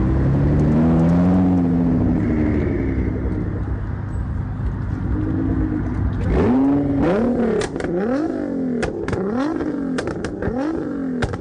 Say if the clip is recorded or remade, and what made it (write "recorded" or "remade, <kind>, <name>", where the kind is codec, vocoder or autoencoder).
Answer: recorded